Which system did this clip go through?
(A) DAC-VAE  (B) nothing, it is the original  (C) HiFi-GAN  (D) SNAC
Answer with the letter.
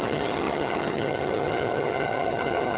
C